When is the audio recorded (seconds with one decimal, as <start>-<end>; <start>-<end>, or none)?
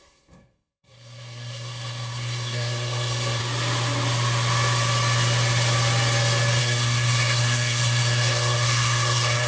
3.4-6.6